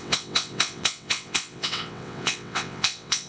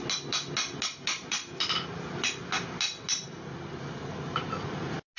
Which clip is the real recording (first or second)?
second